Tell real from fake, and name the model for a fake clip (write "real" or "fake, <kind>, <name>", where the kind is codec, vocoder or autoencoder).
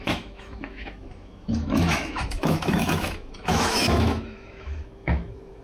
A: fake, autoencoder, DAC-VAE